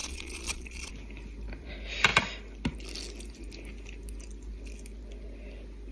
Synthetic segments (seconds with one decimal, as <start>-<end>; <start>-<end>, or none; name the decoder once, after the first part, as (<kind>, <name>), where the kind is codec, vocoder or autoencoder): 0.0-0.9 (vocoder, Vocos)